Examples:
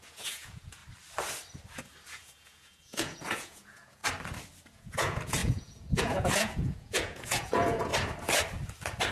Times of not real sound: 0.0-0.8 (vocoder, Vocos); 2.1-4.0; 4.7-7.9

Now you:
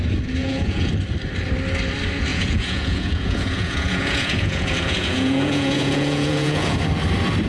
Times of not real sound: 0.4-0.9 (vocoder, Vocos); 2.3-6.8

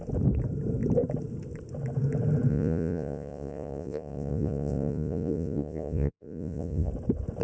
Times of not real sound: 2.5-6.9 (vocoder, Vocos)

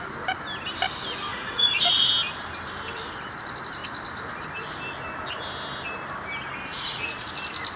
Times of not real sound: 1.3-2.1 (vocoder, Vocos); 6.7-7.3

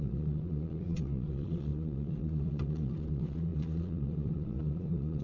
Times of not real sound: 0.0-5.2 (vocoder, Vocos)

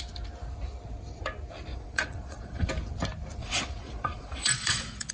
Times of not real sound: 1.7-2.7 (vocoder, Vocos); 3.4-5.1